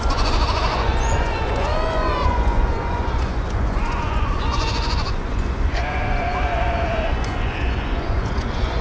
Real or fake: fake